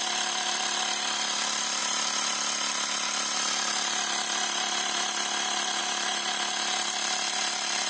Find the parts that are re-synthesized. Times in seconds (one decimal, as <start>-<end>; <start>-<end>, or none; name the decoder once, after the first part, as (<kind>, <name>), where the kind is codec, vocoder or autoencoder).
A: none